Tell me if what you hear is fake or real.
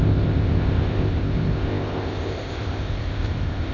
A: fake